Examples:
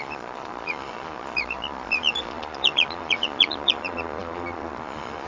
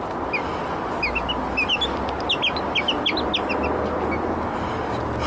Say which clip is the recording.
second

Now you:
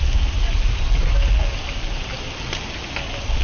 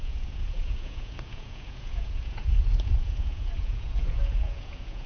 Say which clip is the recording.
first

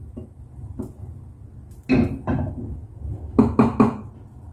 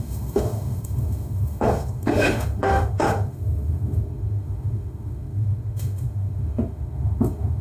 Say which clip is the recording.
first